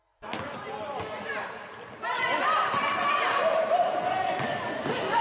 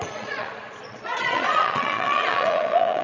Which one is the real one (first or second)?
first